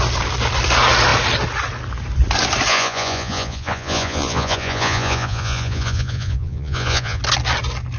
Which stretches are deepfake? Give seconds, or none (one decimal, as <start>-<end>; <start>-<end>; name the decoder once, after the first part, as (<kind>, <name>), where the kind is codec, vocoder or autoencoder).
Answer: 2.7-7.2 (vocoder, Vocos)